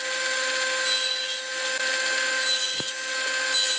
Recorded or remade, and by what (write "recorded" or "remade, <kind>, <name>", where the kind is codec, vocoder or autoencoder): recorded